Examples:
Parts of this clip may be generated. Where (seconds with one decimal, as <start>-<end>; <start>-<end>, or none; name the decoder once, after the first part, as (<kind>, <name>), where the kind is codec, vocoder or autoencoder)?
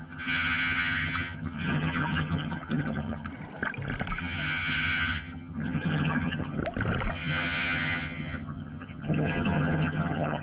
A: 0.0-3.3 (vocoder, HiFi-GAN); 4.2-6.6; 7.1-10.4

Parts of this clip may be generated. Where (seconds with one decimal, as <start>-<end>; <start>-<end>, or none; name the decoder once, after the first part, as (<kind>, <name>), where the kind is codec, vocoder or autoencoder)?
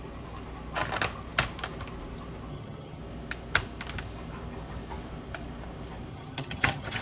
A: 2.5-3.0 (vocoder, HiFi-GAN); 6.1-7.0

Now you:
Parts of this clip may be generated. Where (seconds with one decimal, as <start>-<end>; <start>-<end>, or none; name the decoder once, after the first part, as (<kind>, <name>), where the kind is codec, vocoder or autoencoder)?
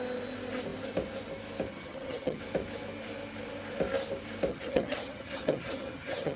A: 1.7-2.4 (vocoder, HiFi-GAN); 4.5-6.4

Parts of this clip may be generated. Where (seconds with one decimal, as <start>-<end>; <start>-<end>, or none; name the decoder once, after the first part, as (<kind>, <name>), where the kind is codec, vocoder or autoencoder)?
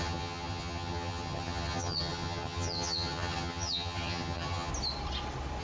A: 0.0-4.7 (vocoder, HiFi-GAN)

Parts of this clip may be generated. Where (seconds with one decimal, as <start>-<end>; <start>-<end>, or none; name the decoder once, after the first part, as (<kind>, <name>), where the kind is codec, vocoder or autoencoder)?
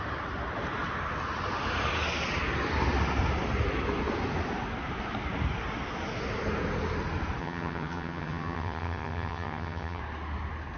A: 7.4-10.0 (vocoder, HiFi-GAN)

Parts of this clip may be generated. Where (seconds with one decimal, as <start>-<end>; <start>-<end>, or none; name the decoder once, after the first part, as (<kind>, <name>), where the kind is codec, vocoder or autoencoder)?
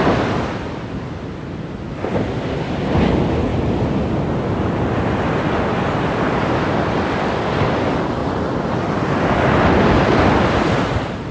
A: none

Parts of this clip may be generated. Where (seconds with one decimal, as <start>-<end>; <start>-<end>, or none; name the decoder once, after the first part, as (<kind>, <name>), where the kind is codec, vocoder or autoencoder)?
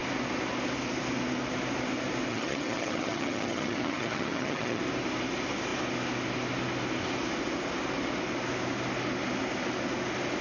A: 2.3-4.8 (vocoder, HiFi-GAN)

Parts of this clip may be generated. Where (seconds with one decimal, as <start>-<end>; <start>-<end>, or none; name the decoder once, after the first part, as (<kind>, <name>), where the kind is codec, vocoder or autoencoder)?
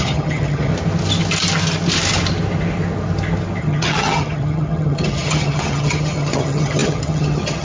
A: 0.0-0.7 (vocoder, HiFi-GAN); 3.6-7.6